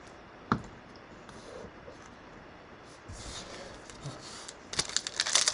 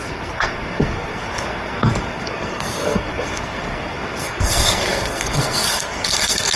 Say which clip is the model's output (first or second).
second